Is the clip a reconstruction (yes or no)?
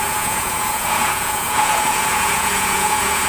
yes